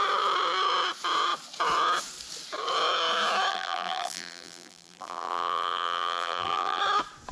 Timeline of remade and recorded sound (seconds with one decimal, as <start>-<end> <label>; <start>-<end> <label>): 0.0-3.5 recorded; 3.5-6.8 remade; 6.8-7.3 recorded